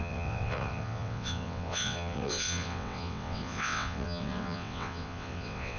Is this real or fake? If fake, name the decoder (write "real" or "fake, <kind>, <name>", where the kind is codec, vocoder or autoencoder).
fake, vocoder, WaveNeXt